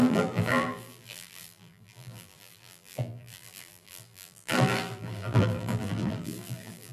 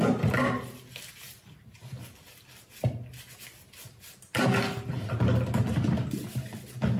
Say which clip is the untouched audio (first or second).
second